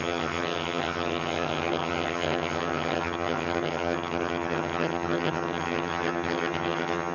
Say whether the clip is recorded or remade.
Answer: remade